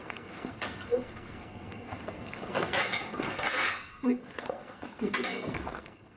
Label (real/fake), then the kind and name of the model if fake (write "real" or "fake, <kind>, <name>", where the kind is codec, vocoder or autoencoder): fake, codec, SNAC